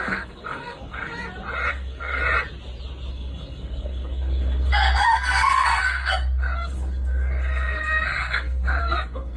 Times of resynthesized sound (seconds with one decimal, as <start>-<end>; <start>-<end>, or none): 0.0-1.1; 1.7-2.2; 3.1-9.4

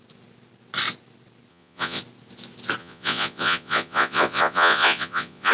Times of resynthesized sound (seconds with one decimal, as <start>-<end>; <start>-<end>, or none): 1.5-2.0; 2.8-5.5

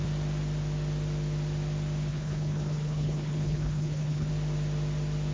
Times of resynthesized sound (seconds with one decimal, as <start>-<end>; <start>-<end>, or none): 2.1-4.3